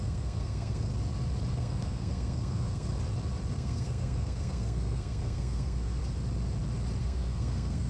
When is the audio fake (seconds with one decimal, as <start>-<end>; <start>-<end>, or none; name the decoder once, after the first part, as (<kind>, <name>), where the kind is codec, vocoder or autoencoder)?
0.0-0.9 (codec, SNAC); 1.5-2.9; 3.5-6.0; 7.0-7.9